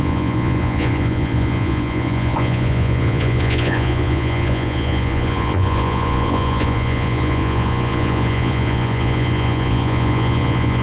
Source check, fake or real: fake